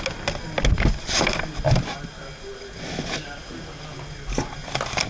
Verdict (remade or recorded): recorded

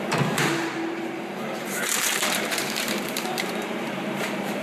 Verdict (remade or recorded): remade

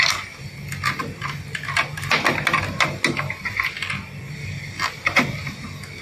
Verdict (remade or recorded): recorded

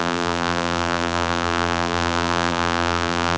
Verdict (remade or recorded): remade